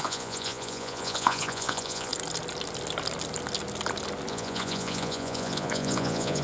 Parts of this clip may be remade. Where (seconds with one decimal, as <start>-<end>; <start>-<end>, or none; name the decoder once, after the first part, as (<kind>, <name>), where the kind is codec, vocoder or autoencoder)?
0.0-2.1 (vocoder, Vocos); 4.3-6.4